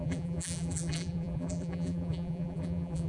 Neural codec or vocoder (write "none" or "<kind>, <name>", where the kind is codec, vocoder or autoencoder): vocoder, BigVGAN v2